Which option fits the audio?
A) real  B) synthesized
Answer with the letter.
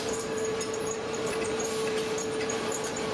B